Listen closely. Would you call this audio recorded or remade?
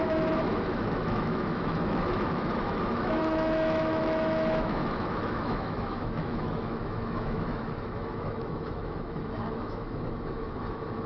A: remade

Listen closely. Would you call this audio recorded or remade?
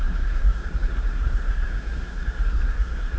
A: remade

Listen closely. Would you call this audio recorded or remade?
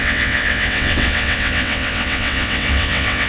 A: remade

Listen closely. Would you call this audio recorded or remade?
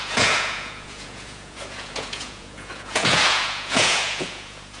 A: remade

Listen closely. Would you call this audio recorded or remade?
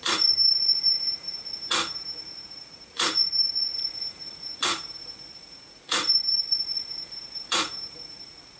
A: remade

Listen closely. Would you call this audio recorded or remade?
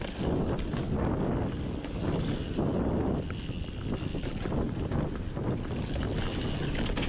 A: recorded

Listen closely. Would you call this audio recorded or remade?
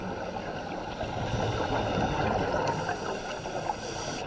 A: recorded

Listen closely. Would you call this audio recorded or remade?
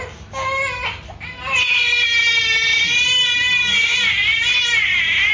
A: recorded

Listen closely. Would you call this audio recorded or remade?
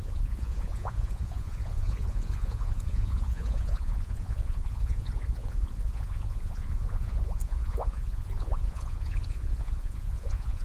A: remade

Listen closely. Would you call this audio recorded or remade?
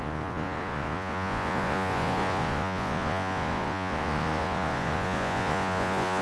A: remade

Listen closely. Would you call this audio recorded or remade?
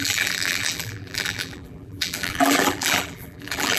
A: remade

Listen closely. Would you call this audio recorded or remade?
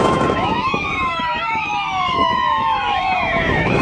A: remade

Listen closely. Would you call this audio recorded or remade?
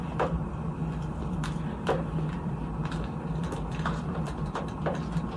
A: remade